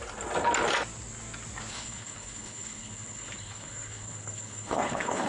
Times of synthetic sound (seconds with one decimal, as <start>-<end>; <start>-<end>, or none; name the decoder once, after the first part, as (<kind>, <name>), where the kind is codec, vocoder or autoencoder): 1.7-5.3 (codec, HILCodec)